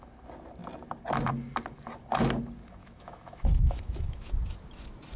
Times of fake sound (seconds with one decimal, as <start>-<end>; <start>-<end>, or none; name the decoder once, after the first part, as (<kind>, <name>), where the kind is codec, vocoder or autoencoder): 2.8-4.3 (autoencoder, DAC-VAE)